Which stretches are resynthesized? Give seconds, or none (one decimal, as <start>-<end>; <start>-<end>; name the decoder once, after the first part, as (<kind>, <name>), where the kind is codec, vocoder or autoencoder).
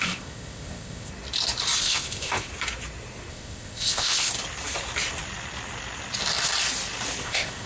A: 0.0-1.1 (codec, ZipCodec); 1.8-2.5; 3.3-4.3; 7.2-7.7